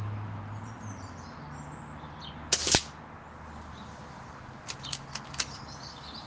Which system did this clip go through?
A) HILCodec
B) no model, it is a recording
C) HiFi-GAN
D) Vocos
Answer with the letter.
B